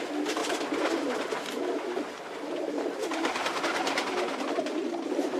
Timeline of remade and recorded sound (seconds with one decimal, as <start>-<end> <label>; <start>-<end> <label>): 0.0-5.4 recorded

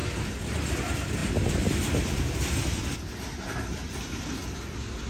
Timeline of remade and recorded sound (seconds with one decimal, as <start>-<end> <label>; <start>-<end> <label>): 0.0-5.1 recorded

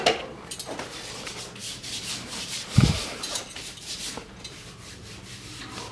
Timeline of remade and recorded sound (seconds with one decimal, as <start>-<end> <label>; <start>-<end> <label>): 0.0-1.6 recorded; 1.6-5.1 remade; 5.1-5.9 recorded

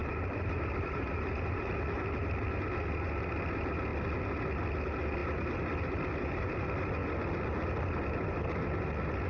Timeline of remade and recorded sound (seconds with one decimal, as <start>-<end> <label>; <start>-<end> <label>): 0.0-1.7 remade; 1.7-9.3 recorded

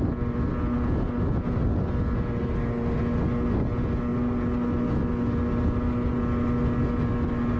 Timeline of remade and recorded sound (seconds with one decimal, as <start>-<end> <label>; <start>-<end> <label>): 0.0-7.6 recorded

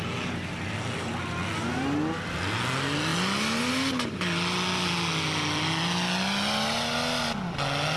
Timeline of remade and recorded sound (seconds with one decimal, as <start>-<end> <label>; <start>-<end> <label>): 0.0-8.0 recorded

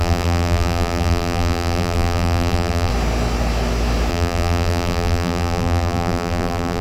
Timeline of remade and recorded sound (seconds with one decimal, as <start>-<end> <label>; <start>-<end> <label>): 0.0-2.9 remade; 2.9-4.1 recorded; 4.1-6.8 remade